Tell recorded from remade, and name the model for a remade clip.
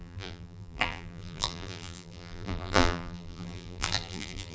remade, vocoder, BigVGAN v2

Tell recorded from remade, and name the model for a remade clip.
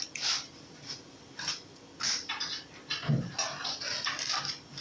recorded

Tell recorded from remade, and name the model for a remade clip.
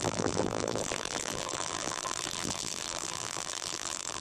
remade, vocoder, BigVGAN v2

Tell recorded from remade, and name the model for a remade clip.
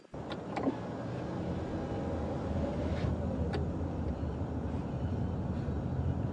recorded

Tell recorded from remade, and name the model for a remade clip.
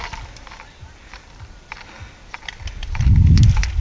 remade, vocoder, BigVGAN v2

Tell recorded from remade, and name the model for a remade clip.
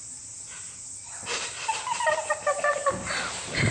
remade, vocoder, BigVGAN v2